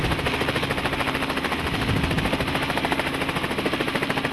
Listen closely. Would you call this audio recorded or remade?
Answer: recorded